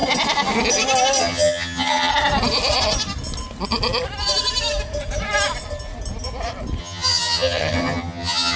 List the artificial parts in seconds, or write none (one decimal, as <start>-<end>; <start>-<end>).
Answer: 1.2-2.1; 6.8-8.6